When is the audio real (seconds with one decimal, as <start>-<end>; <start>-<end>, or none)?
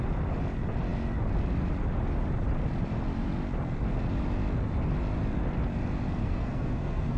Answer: 0.0-6.2